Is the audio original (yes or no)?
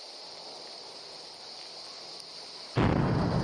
yes